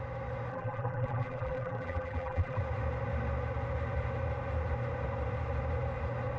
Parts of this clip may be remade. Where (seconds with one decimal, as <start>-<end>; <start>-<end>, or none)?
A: 0.5-2.6